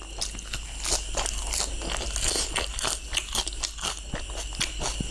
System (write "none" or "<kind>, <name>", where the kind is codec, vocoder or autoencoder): none